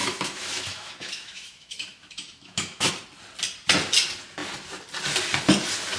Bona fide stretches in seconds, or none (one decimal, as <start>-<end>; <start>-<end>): 2.9-6.0